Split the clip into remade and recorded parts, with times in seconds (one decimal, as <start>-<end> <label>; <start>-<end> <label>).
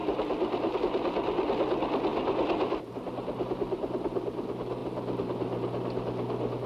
0.0-6.7 recorded